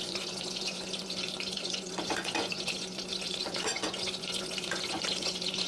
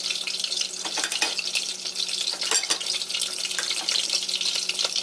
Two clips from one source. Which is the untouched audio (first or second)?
second